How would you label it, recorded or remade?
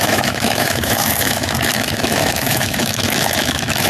remade